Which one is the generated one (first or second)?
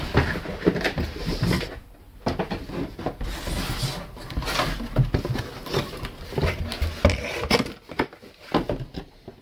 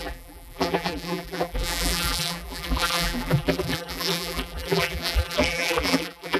second